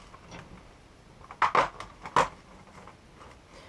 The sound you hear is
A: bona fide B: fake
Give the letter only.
A